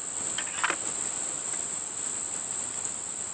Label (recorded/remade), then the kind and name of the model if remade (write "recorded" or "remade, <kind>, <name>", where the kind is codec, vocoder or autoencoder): recorded